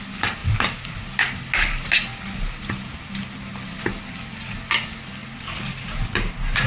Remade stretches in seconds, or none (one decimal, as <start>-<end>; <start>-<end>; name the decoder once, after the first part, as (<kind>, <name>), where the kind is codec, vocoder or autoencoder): 0.4-1.0 (vocoder, BigVGAN v2); 2.1-3.8; 5.2-6.7